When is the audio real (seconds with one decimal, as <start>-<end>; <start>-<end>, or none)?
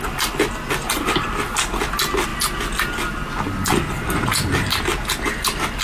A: 0.0-5.8